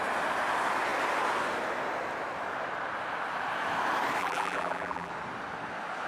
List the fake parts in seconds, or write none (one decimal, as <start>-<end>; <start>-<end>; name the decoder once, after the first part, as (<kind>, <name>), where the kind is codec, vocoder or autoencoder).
4.2-5.1 (vocoder, BigVGAN v2)